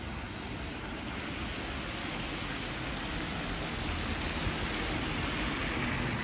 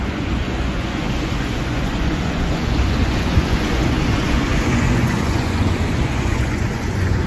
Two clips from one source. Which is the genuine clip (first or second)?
first